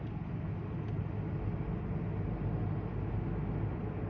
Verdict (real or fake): real